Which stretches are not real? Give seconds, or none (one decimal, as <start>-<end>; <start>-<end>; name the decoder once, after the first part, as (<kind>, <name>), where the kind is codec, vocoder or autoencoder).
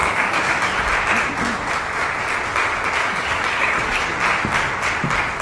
0.0-0.7 (codec, DAC); 3.0-4.0